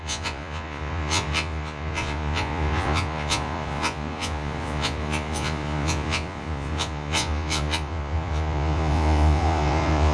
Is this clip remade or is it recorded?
remade